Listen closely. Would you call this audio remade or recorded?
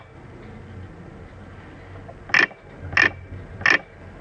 recorded